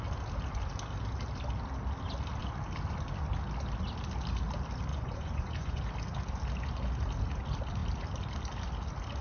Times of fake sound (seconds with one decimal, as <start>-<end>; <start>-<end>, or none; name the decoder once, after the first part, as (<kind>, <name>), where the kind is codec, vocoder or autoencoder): 4.9-5.8 (vocoder, Vocos)